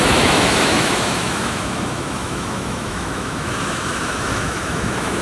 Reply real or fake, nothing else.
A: fake